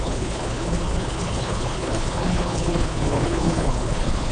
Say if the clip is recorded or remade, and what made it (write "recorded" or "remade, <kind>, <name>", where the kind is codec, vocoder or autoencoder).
remade, codec, HILCodec